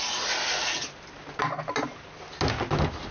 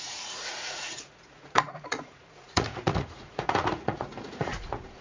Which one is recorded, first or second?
first